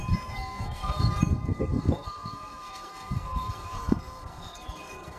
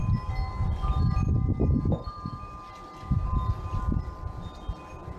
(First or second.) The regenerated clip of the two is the first